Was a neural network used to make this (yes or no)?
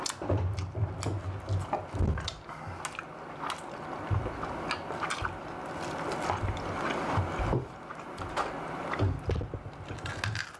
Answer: no